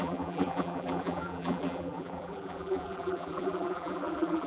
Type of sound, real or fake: fake